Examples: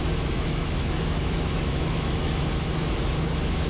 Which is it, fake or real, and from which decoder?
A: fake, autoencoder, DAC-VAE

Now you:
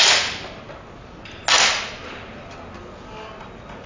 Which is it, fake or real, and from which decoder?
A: real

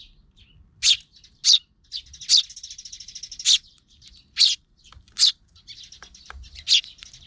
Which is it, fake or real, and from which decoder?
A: real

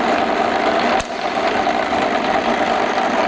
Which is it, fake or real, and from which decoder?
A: real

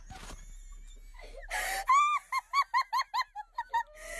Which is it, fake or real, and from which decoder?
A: real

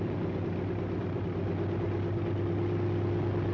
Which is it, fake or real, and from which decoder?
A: real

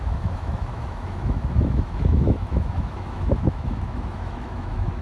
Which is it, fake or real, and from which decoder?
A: fake, autoencoder, DAC-VAE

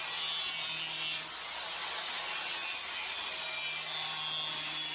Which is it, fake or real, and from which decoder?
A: real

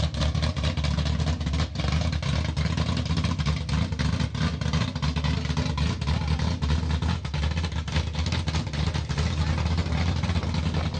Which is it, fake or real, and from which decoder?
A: real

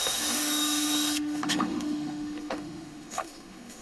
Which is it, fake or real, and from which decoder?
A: fake, autoencoder, DAC-VAE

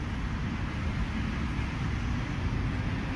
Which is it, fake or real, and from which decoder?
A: real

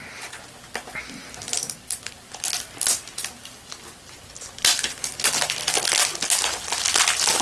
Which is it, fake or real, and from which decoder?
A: real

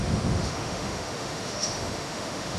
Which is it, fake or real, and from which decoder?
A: fake, autoencoder, DAC-VAE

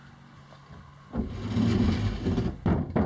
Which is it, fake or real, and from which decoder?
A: real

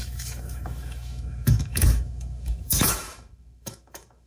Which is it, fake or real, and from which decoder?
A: fake, autoencoder, DAC-VAE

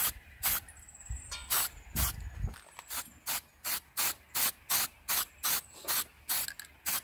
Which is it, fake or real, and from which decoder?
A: real